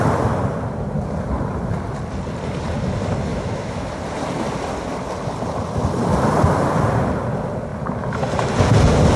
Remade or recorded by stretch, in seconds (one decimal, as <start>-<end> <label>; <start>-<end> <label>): 0.0-3.3 recorded; 3.3-3.9 remade; 3.9-9.2 recorded